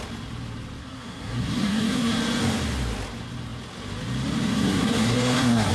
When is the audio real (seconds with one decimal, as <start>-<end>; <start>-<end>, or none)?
0.0-0.8; 2.2-4.5

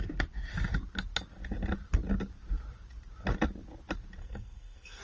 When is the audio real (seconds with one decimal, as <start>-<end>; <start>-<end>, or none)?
0.0-4.2